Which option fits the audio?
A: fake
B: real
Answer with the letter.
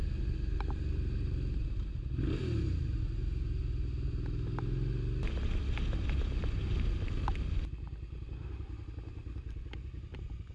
B